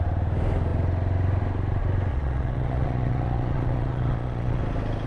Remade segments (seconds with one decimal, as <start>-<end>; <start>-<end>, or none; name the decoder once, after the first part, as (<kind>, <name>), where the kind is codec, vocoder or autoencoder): 2.1-4.6 (vocoder, Vocos)